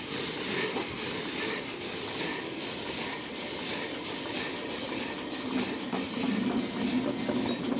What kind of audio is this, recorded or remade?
recorded